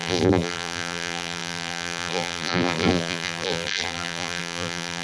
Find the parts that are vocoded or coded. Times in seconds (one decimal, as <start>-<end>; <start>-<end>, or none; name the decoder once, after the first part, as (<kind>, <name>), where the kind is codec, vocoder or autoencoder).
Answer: 0.0-5.0 (vocoder, BigVGAN v2)